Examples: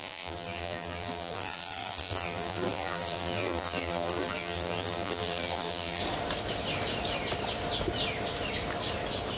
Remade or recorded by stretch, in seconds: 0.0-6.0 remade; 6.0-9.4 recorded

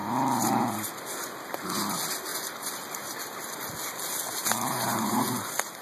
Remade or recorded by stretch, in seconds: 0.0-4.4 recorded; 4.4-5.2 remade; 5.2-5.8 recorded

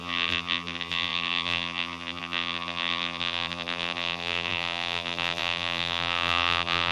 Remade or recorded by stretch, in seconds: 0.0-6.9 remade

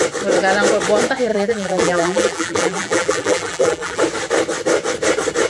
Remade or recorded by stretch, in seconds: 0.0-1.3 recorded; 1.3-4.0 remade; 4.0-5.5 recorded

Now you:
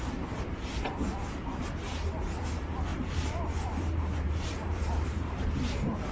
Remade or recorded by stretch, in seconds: 0.0-2.9 recorded; 2.9-5.5 remade; 5.5-6.1 recorded

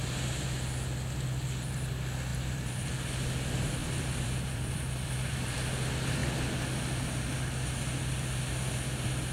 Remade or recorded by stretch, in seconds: 0.0-2.3 recorded; 2.3-2.9 remade; 2.9-3.8 recorded; 3.8-5.7 remade; 5.7-9.3 recorded